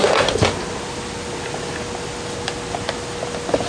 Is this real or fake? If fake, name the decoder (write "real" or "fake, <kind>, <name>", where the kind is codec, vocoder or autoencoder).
real